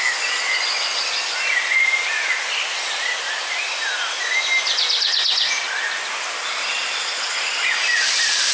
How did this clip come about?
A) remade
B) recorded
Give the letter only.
B